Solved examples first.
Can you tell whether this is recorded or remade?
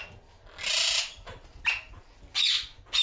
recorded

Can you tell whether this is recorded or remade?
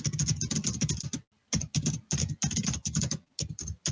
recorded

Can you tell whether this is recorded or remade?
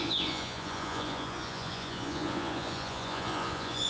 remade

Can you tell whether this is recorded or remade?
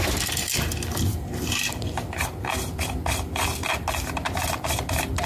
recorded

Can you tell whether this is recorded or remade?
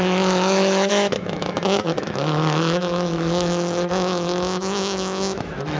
remade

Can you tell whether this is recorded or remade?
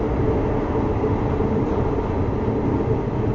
recorded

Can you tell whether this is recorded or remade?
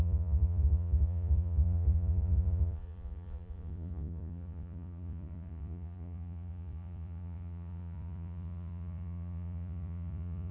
remade